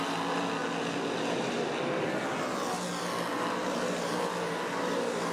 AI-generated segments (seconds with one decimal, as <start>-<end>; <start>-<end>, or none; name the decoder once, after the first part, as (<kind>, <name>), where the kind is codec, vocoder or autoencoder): none